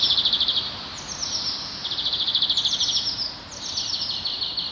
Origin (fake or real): real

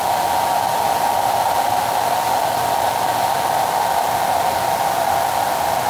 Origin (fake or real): real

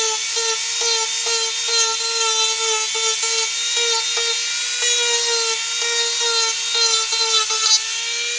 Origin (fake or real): real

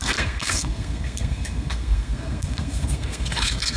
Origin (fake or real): fake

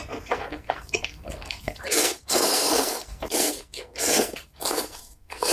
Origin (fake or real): fake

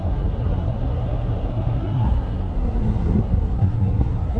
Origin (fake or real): fake